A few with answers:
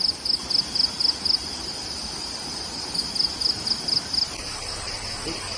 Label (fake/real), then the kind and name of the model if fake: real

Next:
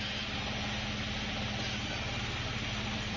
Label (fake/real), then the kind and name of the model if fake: real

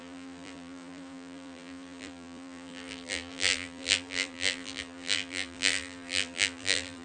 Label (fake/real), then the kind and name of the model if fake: fake, vocoder, BigVGAN v2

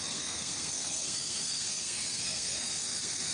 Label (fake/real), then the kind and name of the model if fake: fake, codec, SNAC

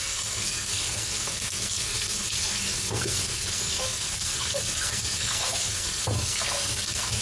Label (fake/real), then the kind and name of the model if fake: fake, codec, SNAC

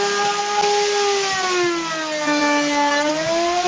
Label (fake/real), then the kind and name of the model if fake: real